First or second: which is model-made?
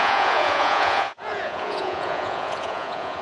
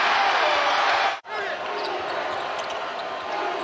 first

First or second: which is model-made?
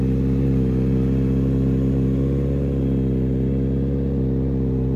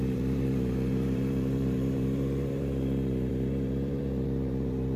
second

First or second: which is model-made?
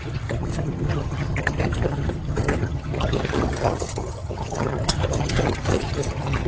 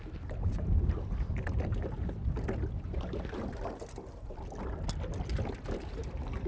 first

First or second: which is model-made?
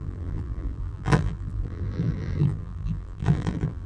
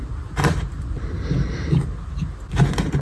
first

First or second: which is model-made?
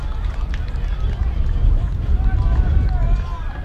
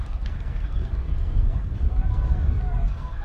second